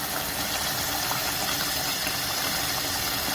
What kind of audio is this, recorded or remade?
recorded